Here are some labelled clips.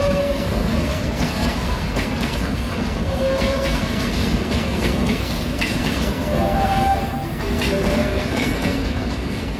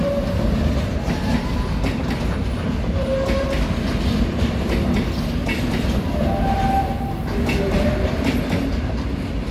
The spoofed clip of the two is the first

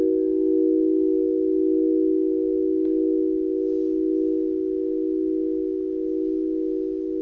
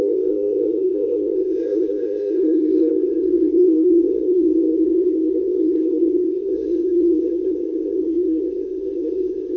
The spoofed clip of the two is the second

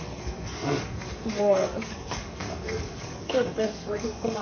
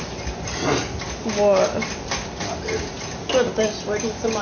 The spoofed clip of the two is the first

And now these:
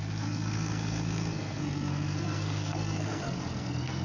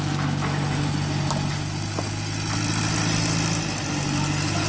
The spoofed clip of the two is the first